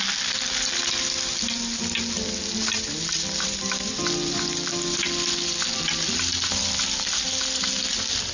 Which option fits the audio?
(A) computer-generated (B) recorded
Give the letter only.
B